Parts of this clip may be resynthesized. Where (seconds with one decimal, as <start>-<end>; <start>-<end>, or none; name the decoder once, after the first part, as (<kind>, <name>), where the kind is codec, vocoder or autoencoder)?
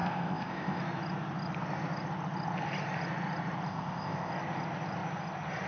0.0-0.8 (codec, ZipCodec); 3.7-4.3